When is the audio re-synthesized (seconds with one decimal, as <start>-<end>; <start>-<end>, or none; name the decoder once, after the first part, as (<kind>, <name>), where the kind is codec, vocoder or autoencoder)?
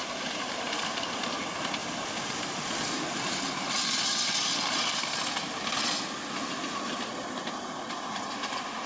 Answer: 0.0-1.4 (vocoder, BigVGAN v2); 1.8-4.8